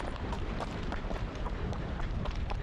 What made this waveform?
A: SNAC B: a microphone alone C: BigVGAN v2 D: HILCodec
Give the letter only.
C